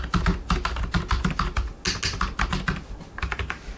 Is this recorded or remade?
recorded